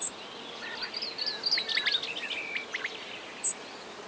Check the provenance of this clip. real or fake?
real